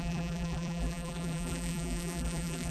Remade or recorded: remade